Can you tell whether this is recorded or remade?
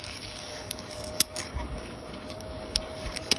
remade